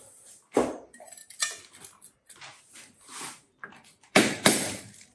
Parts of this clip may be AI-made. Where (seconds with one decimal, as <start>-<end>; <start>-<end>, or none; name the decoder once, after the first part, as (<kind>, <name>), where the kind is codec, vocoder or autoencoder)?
0.0-1.2 (vocoder, BigVGAN v2); 2.6-5.1